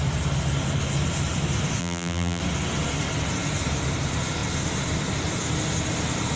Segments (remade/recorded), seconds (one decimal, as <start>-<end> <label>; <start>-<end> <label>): 0.0-1.8 recorded; 1.8-2.4 remade; 2.4-6.4 recorded